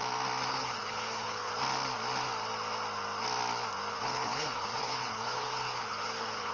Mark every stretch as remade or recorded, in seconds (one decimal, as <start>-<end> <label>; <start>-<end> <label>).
0.0-0.5 recorded; 0.5-1.5 remade; 1.5-3.9 recorded; 3.9-6.5 remade